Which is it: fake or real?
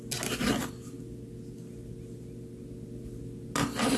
real